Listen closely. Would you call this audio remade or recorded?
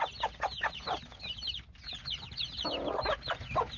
recorded